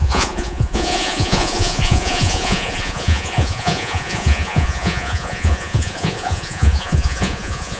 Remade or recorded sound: remade